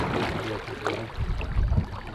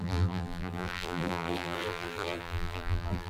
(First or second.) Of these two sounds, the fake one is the second